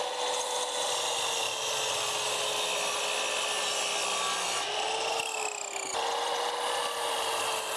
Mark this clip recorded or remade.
recorded